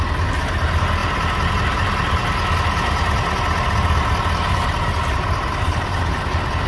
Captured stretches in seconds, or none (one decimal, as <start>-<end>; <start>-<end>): 0.0-6.7